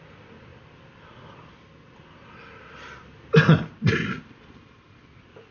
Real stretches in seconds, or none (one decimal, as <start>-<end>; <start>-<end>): 0.0-5.5